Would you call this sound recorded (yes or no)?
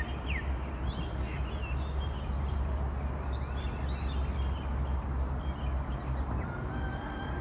yes